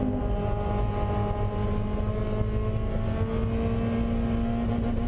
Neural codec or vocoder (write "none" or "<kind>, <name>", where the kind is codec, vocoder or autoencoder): none